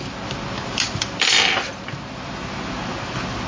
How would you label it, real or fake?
real